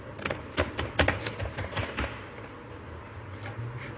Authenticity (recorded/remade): recorded